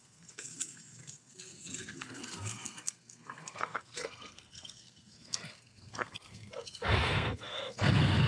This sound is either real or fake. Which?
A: fake